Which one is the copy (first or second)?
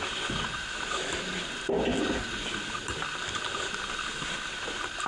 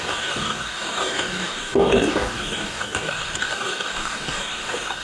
second